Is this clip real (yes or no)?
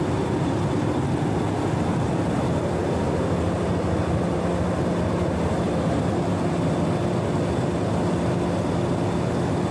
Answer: yes